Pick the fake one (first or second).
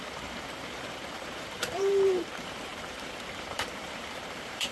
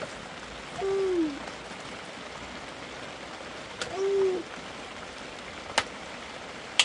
first